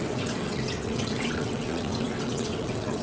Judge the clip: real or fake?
fake